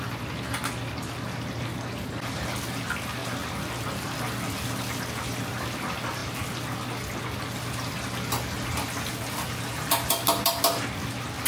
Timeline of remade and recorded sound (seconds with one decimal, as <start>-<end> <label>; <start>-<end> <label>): 0.0-11.5 recorded